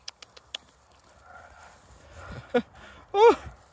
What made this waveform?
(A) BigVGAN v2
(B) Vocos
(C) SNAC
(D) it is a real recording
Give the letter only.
D